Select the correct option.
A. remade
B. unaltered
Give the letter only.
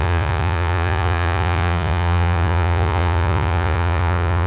A